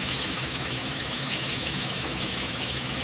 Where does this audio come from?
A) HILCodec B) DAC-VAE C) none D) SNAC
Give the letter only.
B